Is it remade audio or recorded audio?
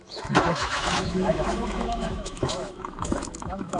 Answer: remade